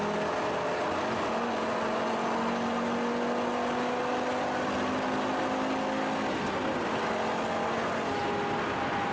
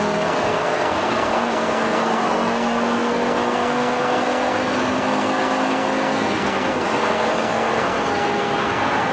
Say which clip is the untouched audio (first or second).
first